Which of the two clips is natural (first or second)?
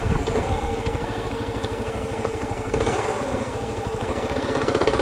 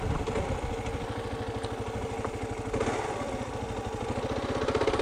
second